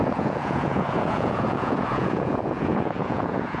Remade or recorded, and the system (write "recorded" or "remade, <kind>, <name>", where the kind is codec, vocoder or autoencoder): remade, vocoder, Vocos